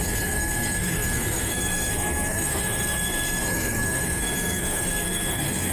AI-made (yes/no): yes